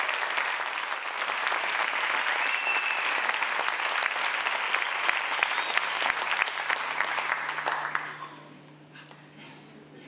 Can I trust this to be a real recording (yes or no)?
yes